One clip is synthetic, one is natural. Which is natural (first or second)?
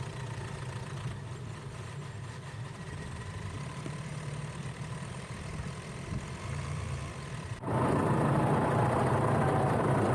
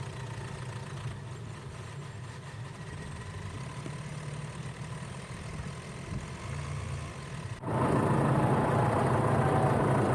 second